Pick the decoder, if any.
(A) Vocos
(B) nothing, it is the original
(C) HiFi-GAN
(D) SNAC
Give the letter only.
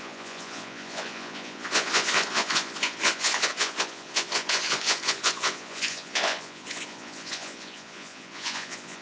A